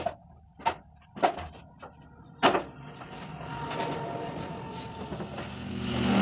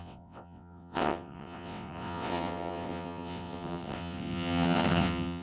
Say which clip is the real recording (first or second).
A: first